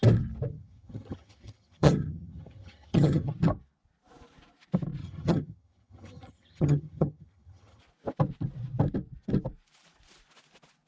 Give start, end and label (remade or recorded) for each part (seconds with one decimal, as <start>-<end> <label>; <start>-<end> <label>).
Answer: 0.0-0.5 recorded; 0.5-3.3 remade; 3.3-5.0 recorded; 5.0-7.8 remade; 7.8-10.9 recorded